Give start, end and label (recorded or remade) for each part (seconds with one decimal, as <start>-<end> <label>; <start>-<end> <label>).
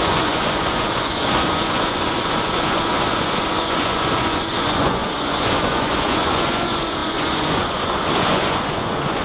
0.0-9.2 remade